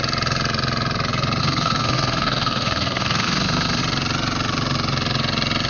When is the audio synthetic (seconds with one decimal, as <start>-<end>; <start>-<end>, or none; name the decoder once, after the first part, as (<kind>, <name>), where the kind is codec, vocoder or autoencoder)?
1.4-3.8 (codec, SNAC)